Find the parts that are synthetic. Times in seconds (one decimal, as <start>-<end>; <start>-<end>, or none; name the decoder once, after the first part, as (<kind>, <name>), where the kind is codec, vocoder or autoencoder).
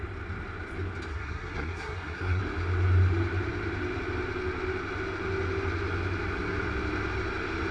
1.1-2.4 (codec, SNAC)